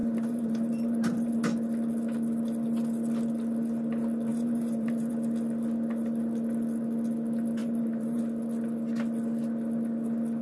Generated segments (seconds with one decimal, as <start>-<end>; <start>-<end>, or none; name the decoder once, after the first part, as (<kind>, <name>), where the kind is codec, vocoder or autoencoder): 0.0-1.3 (vocoder, BigVGAN v2); 4.3-5.1; 7.6-8.2